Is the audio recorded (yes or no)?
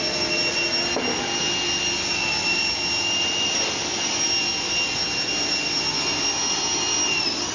yes